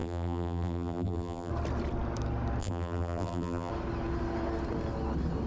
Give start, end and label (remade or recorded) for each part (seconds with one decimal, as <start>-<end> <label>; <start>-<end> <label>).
0.0-1.5 remade; 1.5-2.6 recorded; 2.6-3.7 remade; 3.7-5.5 recorded